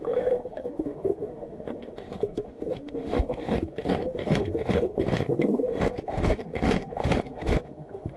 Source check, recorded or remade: remade